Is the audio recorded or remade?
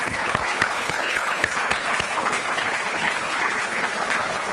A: remade